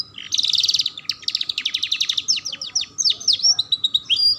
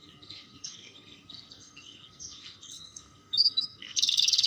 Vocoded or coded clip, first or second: second